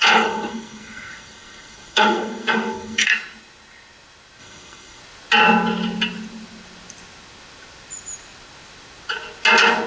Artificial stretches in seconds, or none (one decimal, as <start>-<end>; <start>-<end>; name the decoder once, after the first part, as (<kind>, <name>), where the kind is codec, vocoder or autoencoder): 0.0-3.1 (codec, SNAC); 4.4-5.0